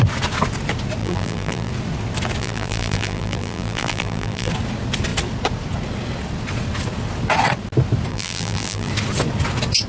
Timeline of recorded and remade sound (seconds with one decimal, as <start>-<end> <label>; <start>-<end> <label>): 0.0-1.0 recorded; 1.0-1.7 remade; 1.7-2.4 recorded; 2.4-4.5 remade; 4.5-8.1 recorded; 8.1-8.9 remade; 8.9-9.9 recorded